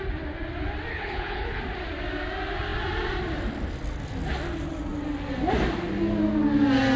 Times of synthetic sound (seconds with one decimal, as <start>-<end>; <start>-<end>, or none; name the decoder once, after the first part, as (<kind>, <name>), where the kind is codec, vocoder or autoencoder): 0.9-1.6 (codec, HILCodec)